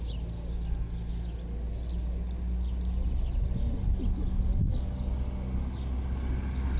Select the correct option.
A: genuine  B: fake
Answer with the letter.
A